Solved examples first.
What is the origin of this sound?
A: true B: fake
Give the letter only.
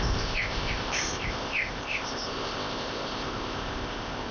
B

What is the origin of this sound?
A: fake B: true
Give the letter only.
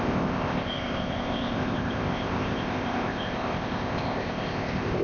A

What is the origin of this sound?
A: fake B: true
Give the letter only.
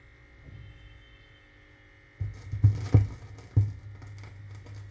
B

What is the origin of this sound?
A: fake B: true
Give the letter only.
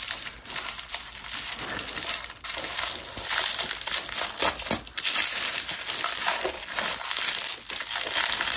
B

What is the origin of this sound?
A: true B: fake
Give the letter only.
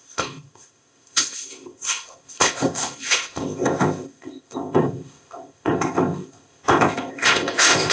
B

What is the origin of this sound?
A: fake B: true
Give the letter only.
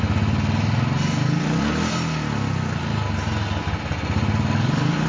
B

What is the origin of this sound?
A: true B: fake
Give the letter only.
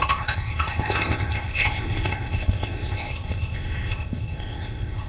B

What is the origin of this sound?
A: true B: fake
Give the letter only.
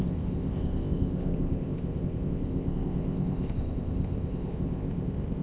B